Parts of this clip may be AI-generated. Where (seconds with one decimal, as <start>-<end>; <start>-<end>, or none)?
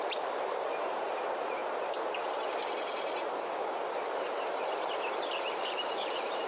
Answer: 0.0-1.6; 4.8-6.5